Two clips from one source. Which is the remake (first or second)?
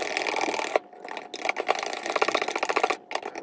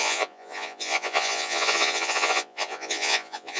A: second